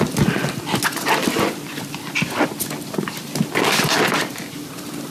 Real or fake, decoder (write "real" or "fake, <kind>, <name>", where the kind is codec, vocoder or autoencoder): real